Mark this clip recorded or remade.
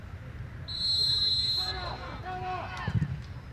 recorded